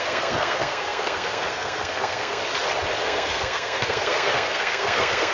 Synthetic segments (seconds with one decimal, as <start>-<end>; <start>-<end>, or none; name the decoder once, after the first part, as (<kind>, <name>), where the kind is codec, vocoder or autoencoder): 0.0-2.4 (codec, SNAC); 3.0-5.3

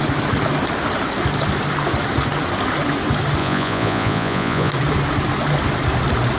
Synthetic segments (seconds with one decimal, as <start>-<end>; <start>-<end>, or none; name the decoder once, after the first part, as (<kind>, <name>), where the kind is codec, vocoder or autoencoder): 3.4-4.7 (vocoder, Vocos)

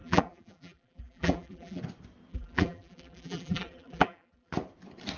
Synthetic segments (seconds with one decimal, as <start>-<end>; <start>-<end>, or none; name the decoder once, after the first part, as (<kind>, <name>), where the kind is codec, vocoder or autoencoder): 0.0-1.8 (vocoder, BigVGAN v2); 2.3-4.5

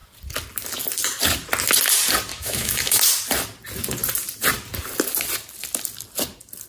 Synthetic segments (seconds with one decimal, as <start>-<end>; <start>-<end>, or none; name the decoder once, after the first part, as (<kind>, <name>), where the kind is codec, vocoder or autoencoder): 2.3-3.0 (autoencoder, DAC-VAE)

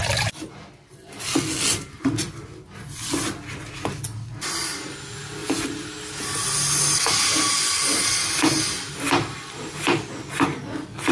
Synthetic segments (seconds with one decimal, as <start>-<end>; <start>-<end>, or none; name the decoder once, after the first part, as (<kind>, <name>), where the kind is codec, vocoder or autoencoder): none

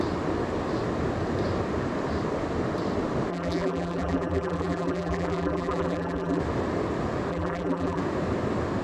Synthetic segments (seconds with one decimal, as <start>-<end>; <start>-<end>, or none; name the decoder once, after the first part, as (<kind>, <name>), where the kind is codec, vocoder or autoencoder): 3.3-6.4 (vocoder, BigVGAN v2); 7.3-8.0

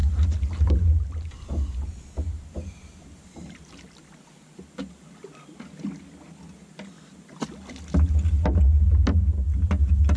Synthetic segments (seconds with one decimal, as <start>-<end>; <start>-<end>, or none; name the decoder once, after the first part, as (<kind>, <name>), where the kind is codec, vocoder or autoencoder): none

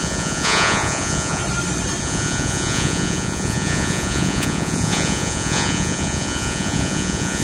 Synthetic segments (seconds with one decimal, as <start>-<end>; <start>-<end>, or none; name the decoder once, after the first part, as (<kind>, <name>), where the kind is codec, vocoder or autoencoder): 0.0-1.4 (vocoder, Vocos); 2.0-7.4